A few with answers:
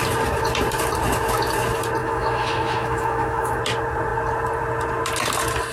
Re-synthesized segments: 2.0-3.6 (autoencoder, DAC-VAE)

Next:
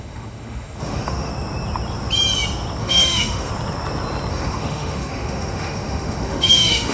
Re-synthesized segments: 0.0-1.3 (autoencoder, DAC-VAE); 2.8-3.5; 4.3-6.9